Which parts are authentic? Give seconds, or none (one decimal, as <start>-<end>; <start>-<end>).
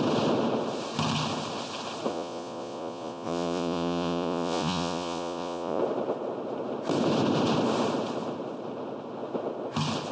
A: 0.0-2.1; 5.8-10.1